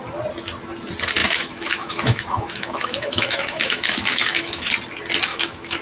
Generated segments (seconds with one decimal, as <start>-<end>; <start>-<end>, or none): 1.2-4.7; 5.3-5.8

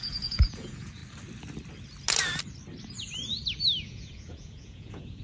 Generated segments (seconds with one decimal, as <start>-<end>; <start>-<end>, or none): 0.0-1.0; 3.8-5.2

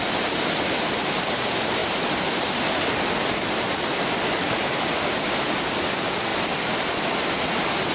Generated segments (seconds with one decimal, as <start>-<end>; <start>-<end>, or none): 1.8-2.6

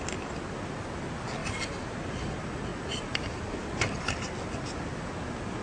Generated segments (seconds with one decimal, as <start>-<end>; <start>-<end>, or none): none